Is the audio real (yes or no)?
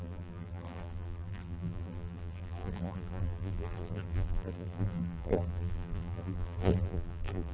no